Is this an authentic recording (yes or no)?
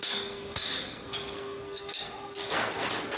no